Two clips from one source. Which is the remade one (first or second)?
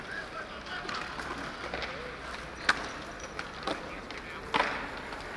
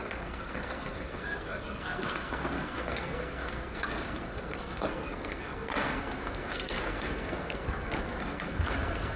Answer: second